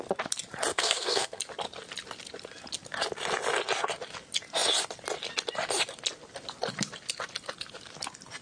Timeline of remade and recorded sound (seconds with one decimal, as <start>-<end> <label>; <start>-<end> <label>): 0.0-0.7 recorded; 0.7-1.4 remade; 1.4-8.4 recorded

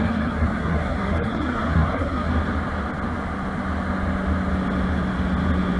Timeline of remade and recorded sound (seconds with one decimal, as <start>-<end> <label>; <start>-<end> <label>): 0.0-2.3 remade; 2.3-5.8 recorded

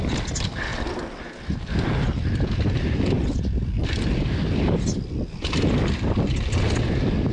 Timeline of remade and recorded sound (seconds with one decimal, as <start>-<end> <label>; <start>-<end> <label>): 0.0-7.3 recorded

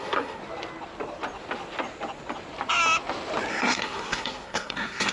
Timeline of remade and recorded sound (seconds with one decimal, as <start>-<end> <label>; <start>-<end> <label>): 0.0-0.4 remade; 0.4-3.5 recorded; 3.5-5.1 remade